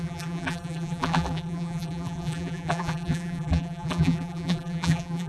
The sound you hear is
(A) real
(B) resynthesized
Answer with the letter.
B